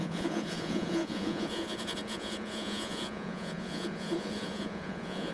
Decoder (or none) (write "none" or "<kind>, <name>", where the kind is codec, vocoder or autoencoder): vocoder, Vocos